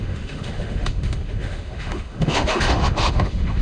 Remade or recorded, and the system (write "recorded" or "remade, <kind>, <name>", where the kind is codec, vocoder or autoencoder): remade, autoencoder, DAC-VAE